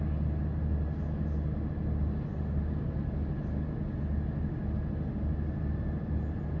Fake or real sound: real